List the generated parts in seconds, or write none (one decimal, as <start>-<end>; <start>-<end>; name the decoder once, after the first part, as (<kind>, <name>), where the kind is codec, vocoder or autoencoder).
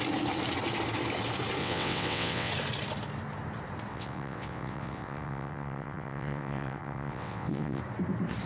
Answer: 1.6-2.5 (vocoder, WaveNeXt); 3.9-7.8